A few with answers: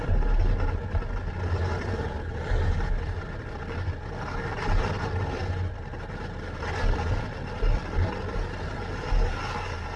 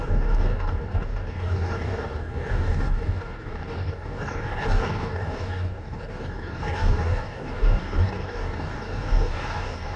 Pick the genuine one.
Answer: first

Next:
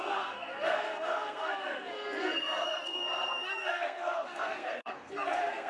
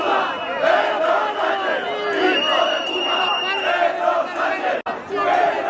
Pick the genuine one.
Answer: second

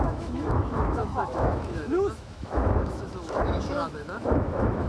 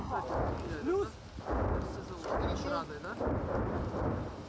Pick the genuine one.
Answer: second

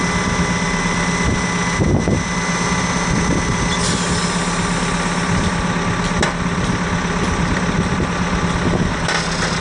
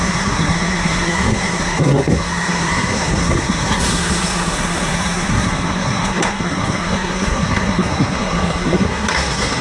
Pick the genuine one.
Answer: first